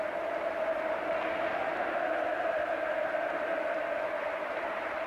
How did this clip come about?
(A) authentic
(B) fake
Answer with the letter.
A